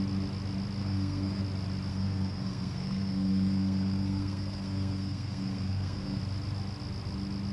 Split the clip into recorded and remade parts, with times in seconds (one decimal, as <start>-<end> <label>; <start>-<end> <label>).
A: 0.0-0.8 recorded; 0.8-1.4 remade; 1.4-1.9 recorded; 1.9-6.2 remade; 6.2-7.5 recorded